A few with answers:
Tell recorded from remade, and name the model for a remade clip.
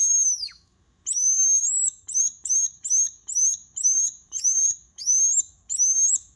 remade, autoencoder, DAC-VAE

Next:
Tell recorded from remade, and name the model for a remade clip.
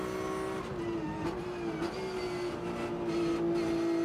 recorded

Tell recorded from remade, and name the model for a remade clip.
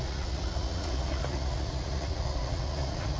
remade, vocoder, Vocos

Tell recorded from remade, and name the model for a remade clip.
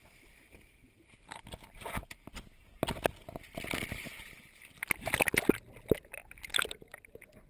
recorded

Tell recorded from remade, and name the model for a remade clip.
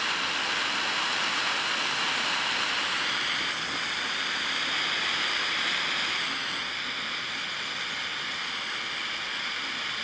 recorded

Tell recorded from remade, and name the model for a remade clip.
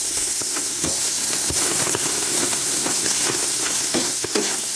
remade, codec, SNAC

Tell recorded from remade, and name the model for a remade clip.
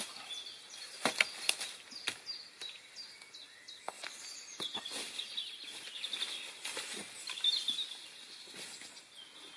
recorded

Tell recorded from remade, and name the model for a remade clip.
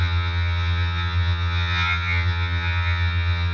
remade, vocoder, HiFi-GAN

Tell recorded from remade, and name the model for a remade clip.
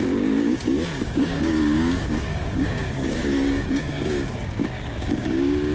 remade, codec, DAC